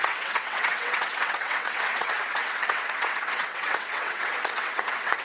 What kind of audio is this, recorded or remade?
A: remade